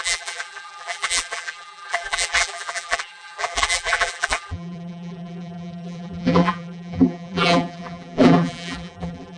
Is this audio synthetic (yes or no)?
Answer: yes